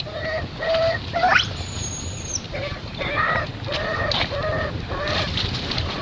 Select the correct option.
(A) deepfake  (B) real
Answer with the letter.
B